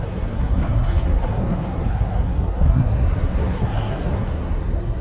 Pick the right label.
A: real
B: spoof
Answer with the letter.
B